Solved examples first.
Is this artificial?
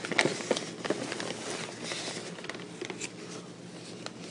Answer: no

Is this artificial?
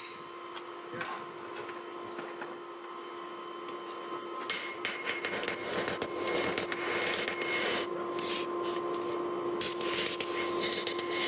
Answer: no